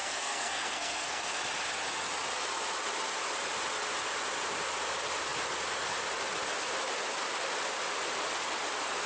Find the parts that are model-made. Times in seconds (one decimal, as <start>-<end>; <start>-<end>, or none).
0.0-1.4